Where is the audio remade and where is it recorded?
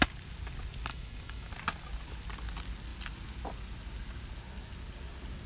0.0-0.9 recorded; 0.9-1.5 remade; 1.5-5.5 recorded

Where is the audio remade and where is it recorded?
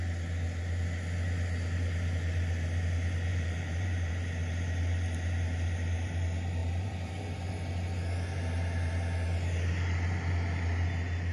0.0-3.3 recorded; 3.3-4.1 remade; 4.1-6.6 recorded; 6.6-7.5 remade; 7.5-11.3 recorded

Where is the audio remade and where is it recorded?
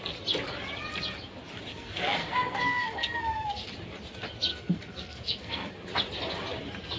0.0-1.7 recorded; 1.7-3.7 remade; 3.7-4.5 recorded; 4.5-5.7 remade; 5.7-7.0 recorded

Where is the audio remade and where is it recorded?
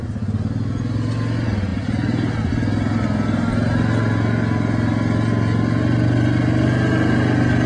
0.0-7.7 recorded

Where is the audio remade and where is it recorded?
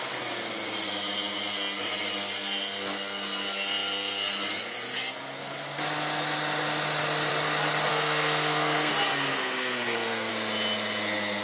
0.0-7.9 recorded; 7.9-8.9 remade; 8.9-9.3 recorded; 9.3-10.3 remade; 10.3-11.4 recorded